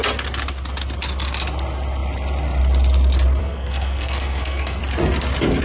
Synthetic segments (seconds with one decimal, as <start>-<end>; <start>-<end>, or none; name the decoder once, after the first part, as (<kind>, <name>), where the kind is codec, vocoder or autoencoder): 3.4-4.8 (codec, SNAC)

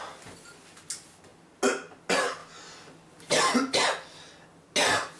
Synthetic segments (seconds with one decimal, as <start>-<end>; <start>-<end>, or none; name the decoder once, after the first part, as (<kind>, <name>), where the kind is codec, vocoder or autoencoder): none

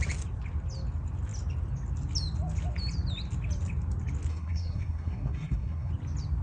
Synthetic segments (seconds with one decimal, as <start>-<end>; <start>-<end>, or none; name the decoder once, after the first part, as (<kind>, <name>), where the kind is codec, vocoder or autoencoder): 4.3-5.9 (codec, SNAC)

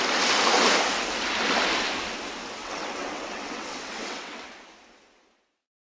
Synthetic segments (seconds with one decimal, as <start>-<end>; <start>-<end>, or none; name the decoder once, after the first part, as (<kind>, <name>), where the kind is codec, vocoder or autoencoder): 2.6-4.5 (vocoder, WaveNeXt)

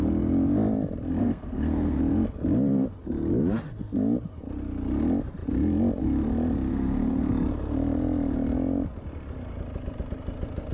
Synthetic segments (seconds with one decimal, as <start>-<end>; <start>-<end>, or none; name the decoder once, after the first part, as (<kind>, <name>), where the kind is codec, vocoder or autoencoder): 1.2-2.0 (codec, SNAC); 6.7-7.3

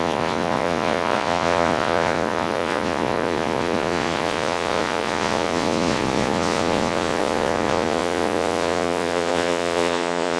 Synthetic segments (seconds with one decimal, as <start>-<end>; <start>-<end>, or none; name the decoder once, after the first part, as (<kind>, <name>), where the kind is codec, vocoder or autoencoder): 0.0-10.4 (vocoder, Vocos)

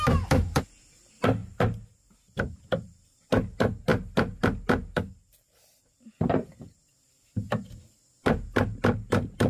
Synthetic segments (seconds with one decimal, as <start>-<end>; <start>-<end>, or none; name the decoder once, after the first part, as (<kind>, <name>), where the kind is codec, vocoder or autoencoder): none